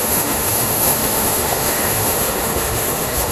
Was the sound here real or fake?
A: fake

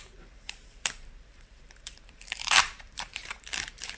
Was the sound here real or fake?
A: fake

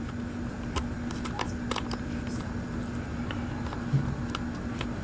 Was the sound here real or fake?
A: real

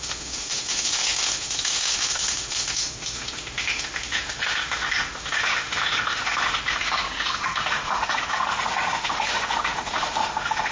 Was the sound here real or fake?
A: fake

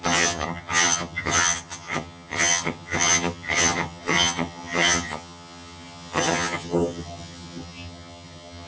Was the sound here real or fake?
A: fake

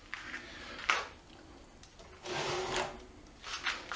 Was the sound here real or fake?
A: real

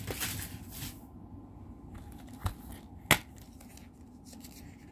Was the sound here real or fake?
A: real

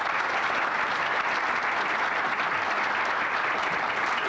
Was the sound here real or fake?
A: real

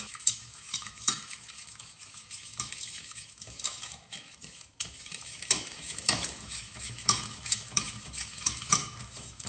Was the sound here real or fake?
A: fake